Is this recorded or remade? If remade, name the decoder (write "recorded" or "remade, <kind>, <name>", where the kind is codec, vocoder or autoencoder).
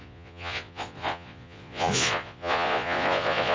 remade, vocoder, Vocos